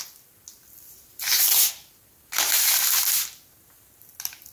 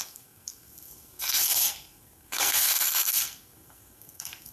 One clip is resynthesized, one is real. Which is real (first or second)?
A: first